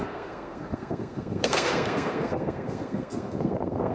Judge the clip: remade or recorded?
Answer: remade